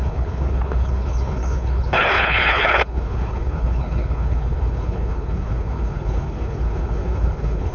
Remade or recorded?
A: remade